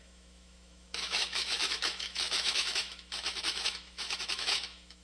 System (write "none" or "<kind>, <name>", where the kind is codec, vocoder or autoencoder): autoencoder, DAC-VAE